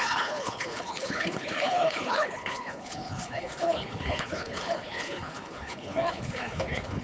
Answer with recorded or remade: remade